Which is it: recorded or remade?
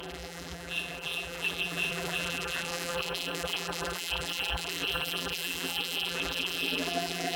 remade